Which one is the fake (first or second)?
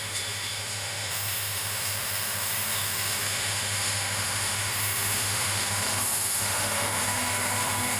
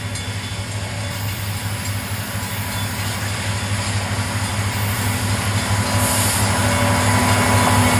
first